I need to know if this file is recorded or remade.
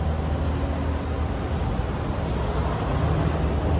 recorded